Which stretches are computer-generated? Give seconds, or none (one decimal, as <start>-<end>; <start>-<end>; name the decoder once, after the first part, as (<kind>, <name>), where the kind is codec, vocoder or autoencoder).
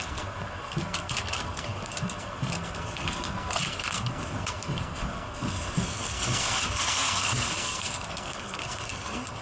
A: 0.0-9.4 (codec, SNAC)